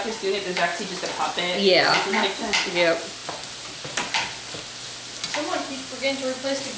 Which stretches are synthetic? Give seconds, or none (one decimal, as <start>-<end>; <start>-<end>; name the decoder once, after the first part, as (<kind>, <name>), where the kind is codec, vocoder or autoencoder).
none

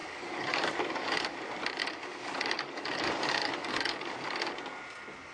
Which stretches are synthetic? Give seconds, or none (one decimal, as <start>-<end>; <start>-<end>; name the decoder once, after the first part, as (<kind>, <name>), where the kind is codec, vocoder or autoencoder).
0.0-1.2 (codec, DAC); 1.8-4.5

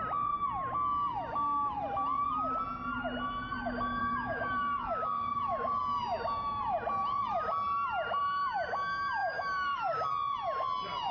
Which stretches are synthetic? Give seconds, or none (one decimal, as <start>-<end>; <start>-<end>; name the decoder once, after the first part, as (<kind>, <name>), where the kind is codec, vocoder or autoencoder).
4.0-5.8 (autoencoder, DAC-VAE); 9.2-10.1

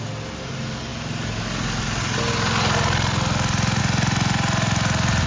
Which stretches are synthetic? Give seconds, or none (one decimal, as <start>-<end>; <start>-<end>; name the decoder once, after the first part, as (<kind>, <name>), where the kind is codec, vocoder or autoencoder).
none

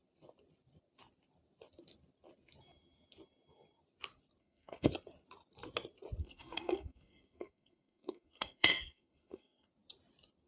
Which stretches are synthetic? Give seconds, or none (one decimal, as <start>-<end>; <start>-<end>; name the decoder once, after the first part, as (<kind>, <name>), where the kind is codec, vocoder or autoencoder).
4.4-4.9 (codec, SNAC); 6.2-9.7

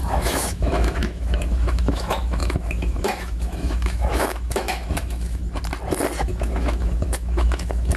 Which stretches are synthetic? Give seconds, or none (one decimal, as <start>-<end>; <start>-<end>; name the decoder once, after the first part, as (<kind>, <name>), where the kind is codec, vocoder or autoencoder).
0.0-5.4 (autoencoder, DAC-VAE); 6.2-8.0

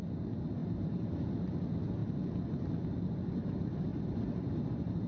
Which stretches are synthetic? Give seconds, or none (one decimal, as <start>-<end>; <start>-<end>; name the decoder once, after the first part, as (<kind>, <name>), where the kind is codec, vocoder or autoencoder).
0.6-1.3 (vocoder, BigVGAN v2); 3.9-5.1

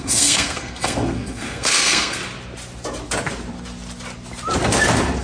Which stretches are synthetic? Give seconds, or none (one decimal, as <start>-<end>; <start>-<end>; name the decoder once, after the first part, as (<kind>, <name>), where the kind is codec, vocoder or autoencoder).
0.0-2.2 (codec, SNAC)